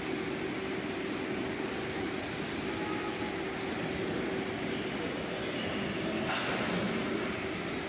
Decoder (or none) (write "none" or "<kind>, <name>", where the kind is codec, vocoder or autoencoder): none